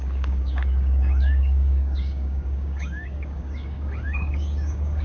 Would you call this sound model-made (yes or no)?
yes